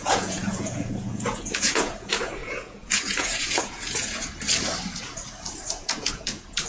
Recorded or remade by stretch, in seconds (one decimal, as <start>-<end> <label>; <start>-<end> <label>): 0.0-4.3 remade; 4.3-5.6 recorded; 5.6-6.7 remade

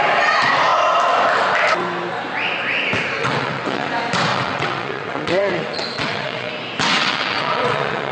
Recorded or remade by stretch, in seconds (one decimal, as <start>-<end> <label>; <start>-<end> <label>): 0.0-3.2 recorded; 3.2-3.9 remade; 3.9-4.3 recorded; 4.3-6.5 remade; 6.5-6.9 recorded; 6.9-8.1 remade